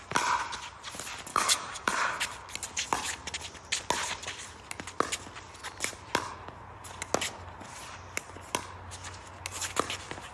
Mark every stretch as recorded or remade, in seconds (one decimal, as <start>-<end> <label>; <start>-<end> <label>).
0.0-1.3 recorded; 1.3-2.2 remade; 2.2-10.3 recorded